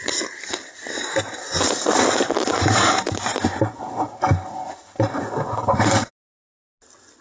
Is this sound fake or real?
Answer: real